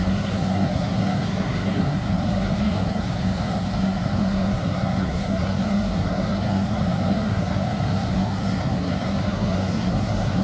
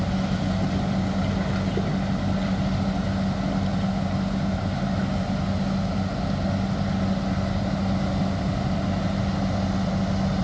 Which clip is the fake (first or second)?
first